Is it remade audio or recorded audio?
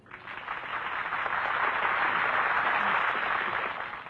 recorded